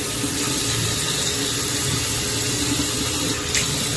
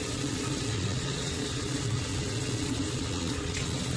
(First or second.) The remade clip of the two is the second